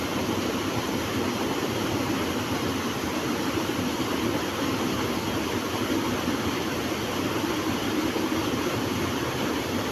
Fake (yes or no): no